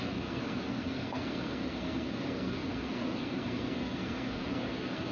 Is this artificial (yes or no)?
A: yes